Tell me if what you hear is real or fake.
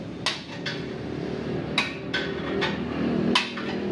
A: real